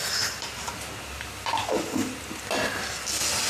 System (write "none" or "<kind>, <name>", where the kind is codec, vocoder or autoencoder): none